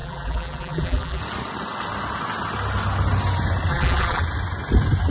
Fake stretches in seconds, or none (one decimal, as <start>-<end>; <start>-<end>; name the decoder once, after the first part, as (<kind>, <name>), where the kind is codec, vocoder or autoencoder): 0.0-1.2 (vocoder, BigVGAN v2); 3.7-4.2